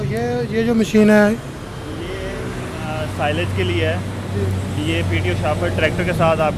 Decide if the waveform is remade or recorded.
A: recorded